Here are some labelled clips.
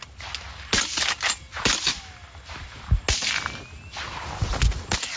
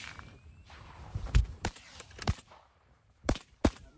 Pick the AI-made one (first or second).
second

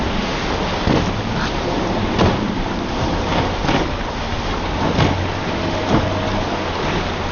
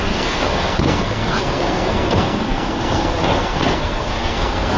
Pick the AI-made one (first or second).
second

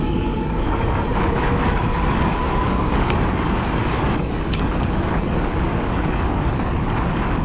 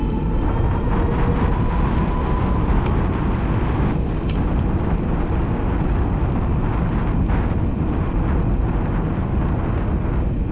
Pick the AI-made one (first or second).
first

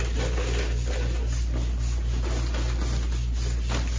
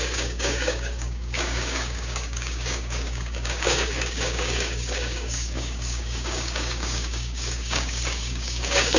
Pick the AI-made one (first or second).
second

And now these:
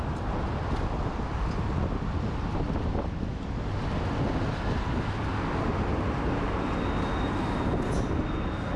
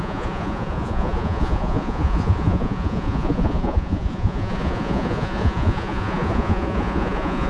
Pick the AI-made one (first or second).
second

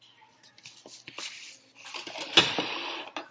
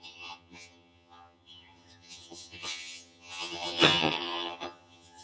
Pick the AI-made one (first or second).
second